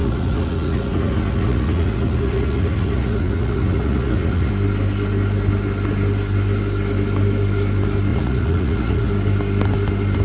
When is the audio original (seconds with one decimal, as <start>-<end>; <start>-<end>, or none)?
4.5-8.1; 9.1-10.2